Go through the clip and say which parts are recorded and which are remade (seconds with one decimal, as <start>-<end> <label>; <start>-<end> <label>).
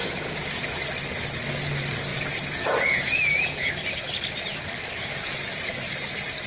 0.0-0.8 remade; 0.8-2.1 recorded; 2.1-3.7 remade; 3.7-6.5 recorded